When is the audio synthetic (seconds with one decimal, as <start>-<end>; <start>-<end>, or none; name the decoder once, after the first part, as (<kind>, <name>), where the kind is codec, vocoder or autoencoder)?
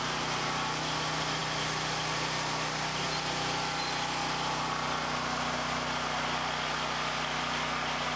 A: none